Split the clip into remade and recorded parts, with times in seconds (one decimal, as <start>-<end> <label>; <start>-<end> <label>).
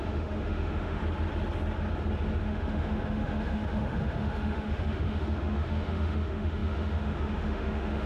0.0-1.0 remade; 1.0-2.4 recorded; 2.4-8.1 remade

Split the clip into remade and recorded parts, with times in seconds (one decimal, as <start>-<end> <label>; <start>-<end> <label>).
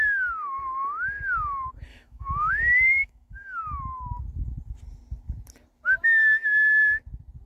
0.0-1.9 recorded; 1.9-2.5 remade; 2.5-3.0 recorded; 3.0-3.6 remade; 3.6-7.5 recorded